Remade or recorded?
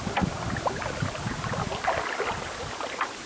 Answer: recorded